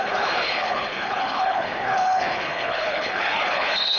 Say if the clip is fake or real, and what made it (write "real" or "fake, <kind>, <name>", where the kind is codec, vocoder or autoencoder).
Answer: fake, codec, HILCodec